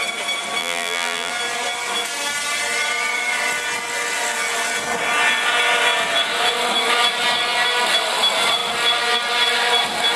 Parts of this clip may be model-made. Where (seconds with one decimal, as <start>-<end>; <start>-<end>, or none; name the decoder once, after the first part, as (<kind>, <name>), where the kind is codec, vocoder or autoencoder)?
0.6-1.3 (vocoder, BigVGAN v2)